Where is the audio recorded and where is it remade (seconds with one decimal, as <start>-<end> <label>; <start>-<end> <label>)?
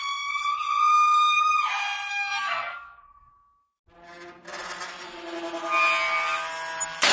0.0-0.9 recorded; 0.9-1.5 remade; 1.5-2.1 recorded; 2.1-3.3 remade; 3.3-7.1 recorded